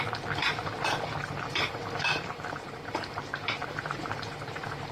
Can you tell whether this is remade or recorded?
remade